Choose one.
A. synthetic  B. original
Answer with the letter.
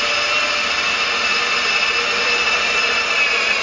A